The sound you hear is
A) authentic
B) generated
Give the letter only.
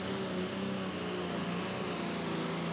A